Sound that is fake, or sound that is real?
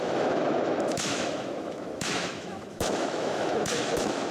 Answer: fake